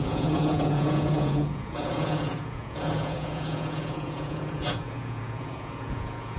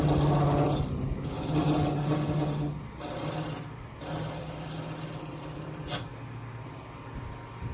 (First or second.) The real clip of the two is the second